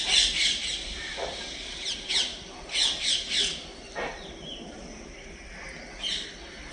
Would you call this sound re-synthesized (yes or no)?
no